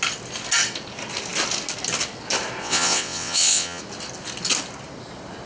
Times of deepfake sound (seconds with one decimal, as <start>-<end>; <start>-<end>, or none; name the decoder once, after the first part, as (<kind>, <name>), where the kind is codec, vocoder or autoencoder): 2.6-3.8 (vocoder, WaveNeXt)